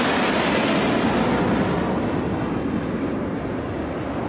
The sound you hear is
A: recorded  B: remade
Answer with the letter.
A